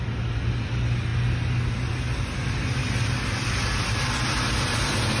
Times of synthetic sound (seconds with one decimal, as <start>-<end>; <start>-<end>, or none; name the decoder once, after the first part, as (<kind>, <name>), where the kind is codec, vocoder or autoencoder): none